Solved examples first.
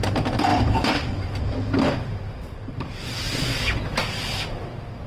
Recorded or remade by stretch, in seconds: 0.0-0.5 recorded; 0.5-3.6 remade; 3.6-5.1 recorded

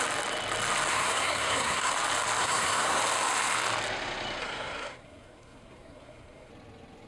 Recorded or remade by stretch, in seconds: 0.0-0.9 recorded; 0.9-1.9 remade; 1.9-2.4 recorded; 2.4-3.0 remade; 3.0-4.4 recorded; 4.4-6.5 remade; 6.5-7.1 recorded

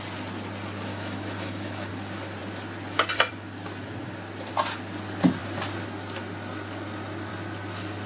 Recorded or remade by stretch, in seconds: 0.0-0.9 recorded; 0.9-1.9 remade; 1.9-8.1 recorded

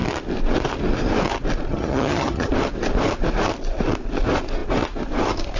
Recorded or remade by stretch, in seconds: 0.0-1.7 recorded; 1.7-2.5 remade; 2.5-5.6 recorded

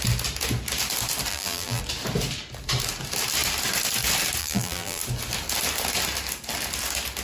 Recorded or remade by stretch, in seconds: 0.0-1.3 recorded; 1.3-1.8 remade; 1.8-4.4 recorded; 4.4-5.0 remade; 5.0-7.2 recorded

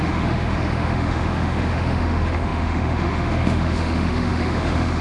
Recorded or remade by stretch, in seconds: 0.0-5.0 remade